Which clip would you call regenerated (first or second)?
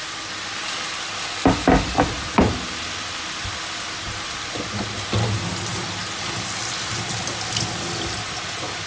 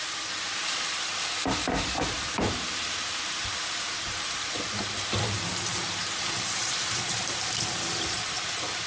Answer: second